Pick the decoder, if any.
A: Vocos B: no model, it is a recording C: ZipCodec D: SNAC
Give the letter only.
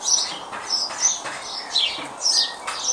B